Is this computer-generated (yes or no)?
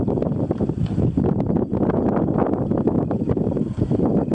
no